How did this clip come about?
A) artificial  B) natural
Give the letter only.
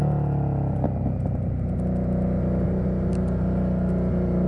B